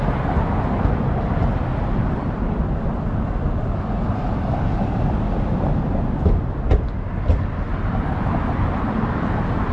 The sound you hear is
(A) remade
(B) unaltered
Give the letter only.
B